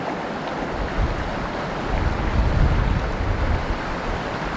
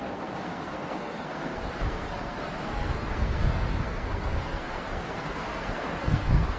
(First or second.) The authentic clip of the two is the first